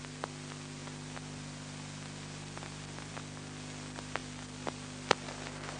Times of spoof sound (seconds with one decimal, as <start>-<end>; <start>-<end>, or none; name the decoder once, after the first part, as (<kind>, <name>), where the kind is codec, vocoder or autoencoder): none